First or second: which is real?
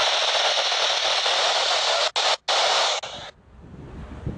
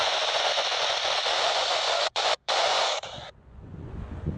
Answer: first